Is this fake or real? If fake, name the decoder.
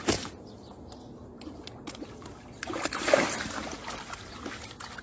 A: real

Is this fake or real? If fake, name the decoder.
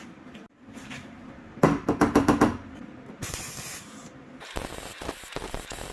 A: fake, vocoder, BigVGAN v2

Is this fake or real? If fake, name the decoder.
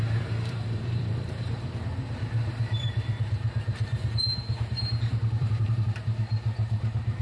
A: fake, vocoder, BigVGAN v2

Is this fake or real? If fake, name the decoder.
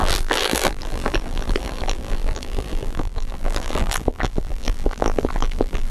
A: fake, vocoder, BigVGAN v2